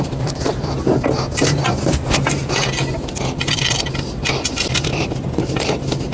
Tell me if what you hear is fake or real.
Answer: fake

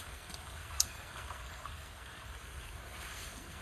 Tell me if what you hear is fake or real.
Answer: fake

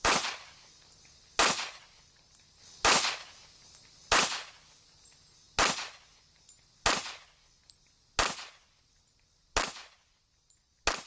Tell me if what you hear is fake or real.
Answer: real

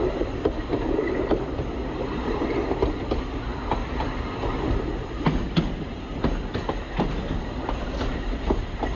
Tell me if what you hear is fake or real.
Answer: real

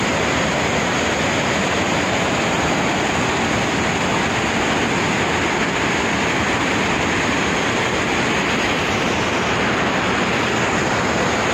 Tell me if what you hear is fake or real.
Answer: real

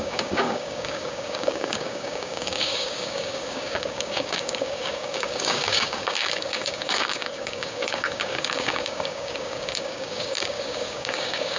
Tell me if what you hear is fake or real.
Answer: fake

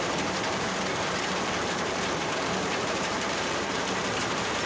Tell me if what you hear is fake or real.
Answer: fake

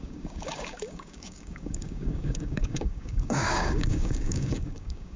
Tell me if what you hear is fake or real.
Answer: fake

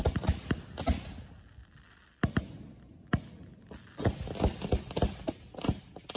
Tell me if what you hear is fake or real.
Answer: real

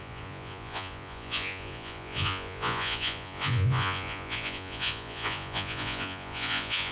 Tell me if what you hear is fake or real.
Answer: fake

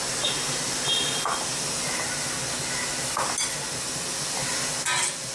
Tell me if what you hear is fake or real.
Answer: real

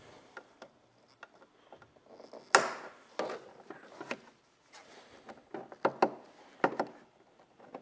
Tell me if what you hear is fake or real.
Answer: real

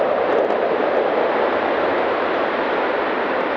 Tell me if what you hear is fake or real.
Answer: real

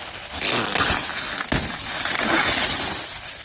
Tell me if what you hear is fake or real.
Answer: real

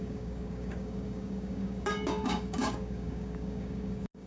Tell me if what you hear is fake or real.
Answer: fake